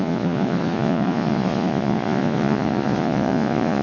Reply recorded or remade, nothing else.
remade